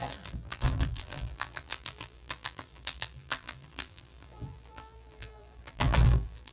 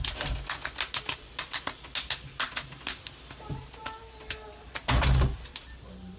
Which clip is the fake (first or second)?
first